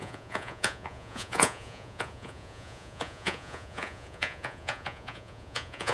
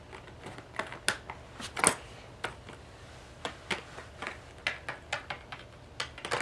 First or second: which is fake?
first